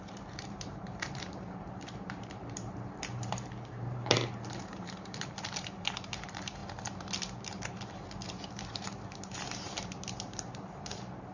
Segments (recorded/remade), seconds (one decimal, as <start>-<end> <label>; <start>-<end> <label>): 0.0-6.6 remade; 6.6-8.5 recorded; 8.5-11.3 remade